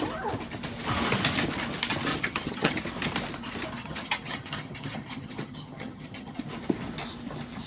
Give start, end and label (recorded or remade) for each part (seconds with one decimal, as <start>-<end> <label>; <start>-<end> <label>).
0.0-2.1 recorded; 2.1-2.8 remade; 2.8-3.8 recorded; 3.8-6.4 remade; 6.4-7.7 recorded